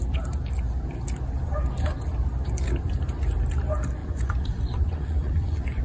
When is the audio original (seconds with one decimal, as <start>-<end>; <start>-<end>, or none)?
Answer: 0.0-4.0